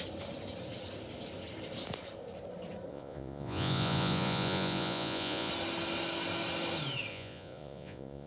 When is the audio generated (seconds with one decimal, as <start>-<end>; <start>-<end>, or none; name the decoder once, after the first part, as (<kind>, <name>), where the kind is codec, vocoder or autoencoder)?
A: 2.9-5.5 (vocoder, Vocos); 7.1-8.3